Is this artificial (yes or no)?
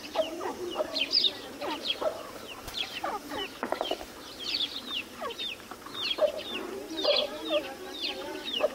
yes